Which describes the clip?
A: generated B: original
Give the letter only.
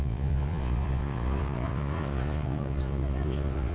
A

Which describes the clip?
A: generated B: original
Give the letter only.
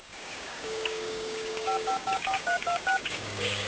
A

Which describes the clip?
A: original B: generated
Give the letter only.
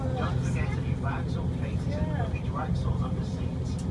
A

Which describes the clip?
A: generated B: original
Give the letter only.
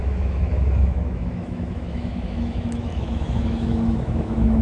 A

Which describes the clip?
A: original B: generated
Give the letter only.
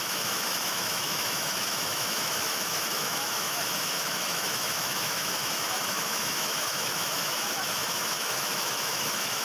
B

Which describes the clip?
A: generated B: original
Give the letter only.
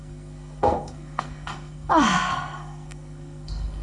A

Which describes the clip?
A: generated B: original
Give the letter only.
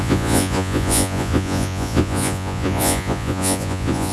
A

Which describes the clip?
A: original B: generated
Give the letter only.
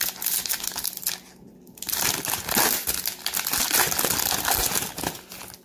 A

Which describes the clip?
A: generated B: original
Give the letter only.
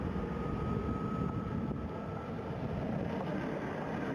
B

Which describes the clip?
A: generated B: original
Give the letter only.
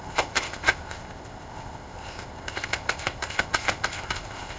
A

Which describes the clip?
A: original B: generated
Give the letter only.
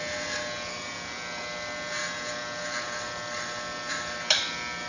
A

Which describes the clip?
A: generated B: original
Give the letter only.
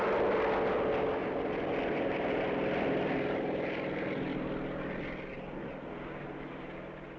B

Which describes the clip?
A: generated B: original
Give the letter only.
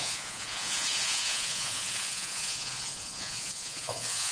A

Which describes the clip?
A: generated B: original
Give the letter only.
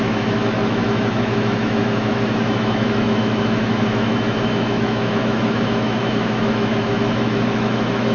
A